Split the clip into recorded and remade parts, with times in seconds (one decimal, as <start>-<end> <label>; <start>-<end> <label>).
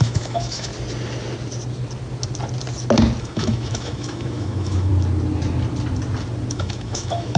0.0-0.7 remade; 0.7-3.2 recorded; 3.2-4.9 remade; 4.9-6.5 recorded; 6.5-7.4 remade